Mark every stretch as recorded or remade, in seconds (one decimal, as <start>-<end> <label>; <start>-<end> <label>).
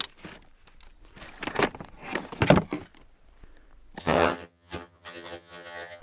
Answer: 0.0-4.0 recorded; 4.0-6.0 remade